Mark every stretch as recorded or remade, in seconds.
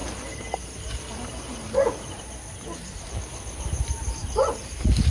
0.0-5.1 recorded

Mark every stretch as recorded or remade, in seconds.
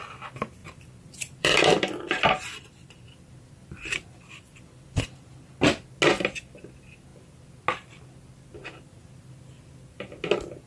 0.0-0.6 recorded; 0.6-5.6 remade; 5.6-10.7 recorded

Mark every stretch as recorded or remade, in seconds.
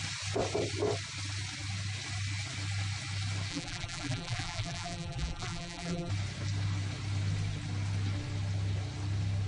0.0-3.5 recorded; 3.5-6.1 remade; 6.1-9.5 recorded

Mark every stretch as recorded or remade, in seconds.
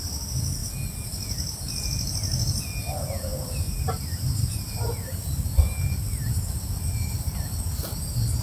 0.0-3.3 recorded; 3.3-4.9 remade; 4.9-8.4 recorded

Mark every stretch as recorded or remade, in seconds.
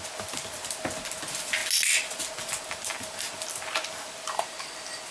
0.0-5.1 recorded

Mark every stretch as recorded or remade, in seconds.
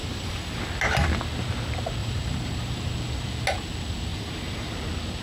0.0-0.6 remade; 0.6-2.0 recorded; 2.0-2.9 remade; 2.9-4.1 recorded; 4.1-4.7 remade; 4.7-5.2 recorded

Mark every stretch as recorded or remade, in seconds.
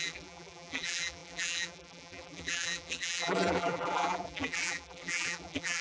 0.0-5.8 remade